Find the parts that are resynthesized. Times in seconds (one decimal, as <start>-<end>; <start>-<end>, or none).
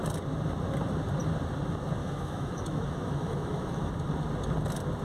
2.0-3.9